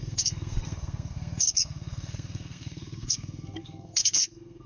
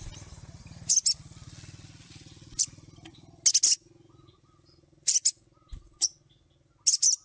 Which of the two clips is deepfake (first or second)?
first